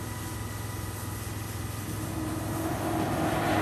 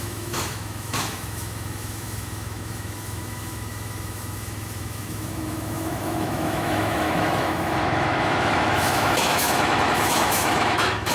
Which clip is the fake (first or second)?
second